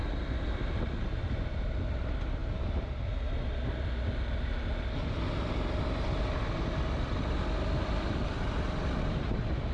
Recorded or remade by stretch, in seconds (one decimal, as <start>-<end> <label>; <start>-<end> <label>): 0.0-9.7 recorded